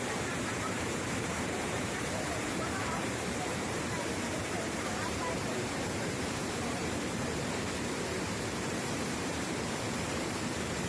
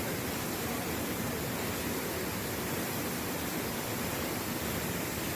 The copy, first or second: first